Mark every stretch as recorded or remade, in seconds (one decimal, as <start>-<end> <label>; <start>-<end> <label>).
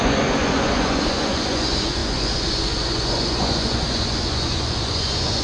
0.0-5.4 remade